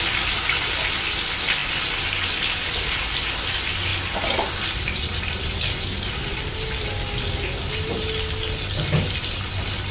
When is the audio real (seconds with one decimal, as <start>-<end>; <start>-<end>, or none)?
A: 0.0-9.9